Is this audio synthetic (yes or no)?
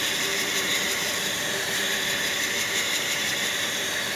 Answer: yes